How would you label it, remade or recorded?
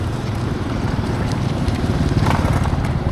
remade